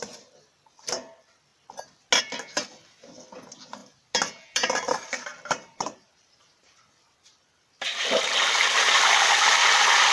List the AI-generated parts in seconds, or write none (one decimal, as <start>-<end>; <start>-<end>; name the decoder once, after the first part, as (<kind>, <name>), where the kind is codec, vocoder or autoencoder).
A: 3.8-6.8 (vocoder, BigVGAN v2)

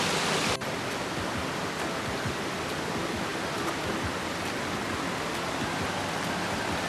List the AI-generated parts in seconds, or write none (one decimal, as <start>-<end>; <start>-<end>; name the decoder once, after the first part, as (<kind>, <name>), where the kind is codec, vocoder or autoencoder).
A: 3.3-3.8 (vocoder, BigVGAN v2)